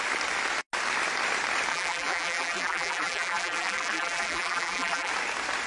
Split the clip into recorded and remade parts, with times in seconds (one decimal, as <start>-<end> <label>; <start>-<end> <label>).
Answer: 0.0-1.7 recorded; 1.7-5.1 remade; 5.1-5.7 recorded